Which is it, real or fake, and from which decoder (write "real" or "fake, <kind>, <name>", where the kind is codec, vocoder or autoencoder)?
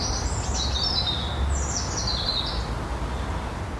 real